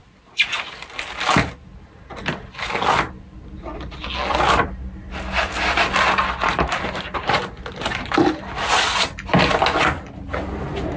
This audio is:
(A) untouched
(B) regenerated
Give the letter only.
A